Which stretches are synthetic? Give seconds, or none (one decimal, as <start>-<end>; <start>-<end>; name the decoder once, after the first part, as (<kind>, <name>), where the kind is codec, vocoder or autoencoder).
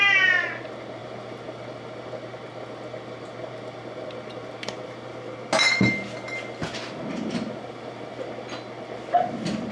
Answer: none